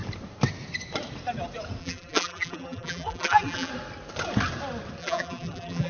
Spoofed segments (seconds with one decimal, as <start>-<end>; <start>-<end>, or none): 1.8-3.7; 5.0-5.9